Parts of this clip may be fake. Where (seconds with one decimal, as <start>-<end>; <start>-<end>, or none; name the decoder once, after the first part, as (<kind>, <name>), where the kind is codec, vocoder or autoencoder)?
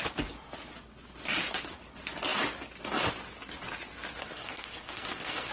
4.2-5.5 (codec, SNAC)